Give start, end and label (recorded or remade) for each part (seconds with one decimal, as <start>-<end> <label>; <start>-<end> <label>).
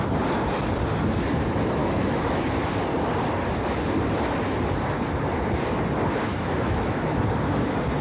0.0-1.8 recorded; 1.8-2.4 remade; 2.4-6.3 recorded; 6.3-7.2 remade; 7.2-8.0 recorded